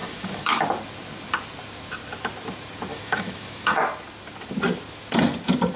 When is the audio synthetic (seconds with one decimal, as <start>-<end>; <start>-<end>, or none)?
0.0-0.6; 2.9-3.8